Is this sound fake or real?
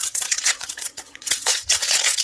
fake